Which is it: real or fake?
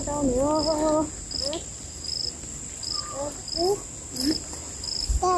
real